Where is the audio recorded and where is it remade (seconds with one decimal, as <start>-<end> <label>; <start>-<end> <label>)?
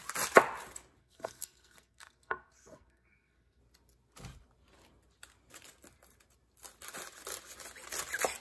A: 0.0-1.0 recorded; 1.0-3.6 remade; 3.6-8.4 recorded